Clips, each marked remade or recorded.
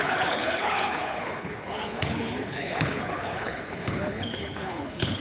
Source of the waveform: remade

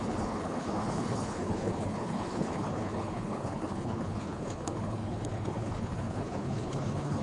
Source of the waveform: remade